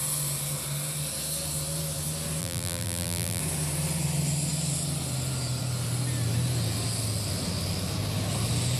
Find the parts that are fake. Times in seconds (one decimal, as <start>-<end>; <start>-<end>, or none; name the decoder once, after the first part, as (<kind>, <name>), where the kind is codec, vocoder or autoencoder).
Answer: 2.4-3.4 (vocoder, BigVGAN v2)